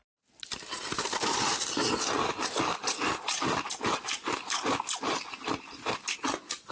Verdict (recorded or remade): recorded